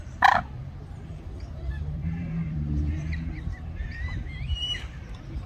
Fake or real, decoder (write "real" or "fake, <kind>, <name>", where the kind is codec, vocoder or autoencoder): fake, vocoder, BigVGAN v2